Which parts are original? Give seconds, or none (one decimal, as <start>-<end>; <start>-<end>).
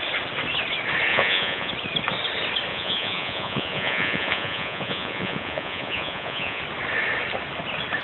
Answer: 0.0-1.1; 1.7-2.7; 6.6-8.0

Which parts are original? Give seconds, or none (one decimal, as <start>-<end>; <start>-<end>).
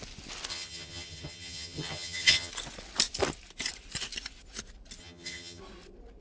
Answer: 0.0-0.5; 2.5-5.0; 5.6-6.2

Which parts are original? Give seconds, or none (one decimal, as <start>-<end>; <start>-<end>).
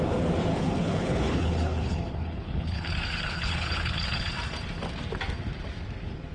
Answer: 0.0-0.5; 4.3-6.3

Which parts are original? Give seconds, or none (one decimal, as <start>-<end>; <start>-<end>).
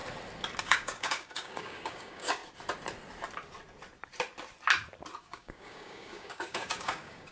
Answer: 0.0-0.6; 2.4-5.2